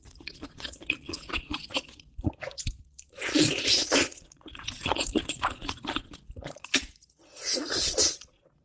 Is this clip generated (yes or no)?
yes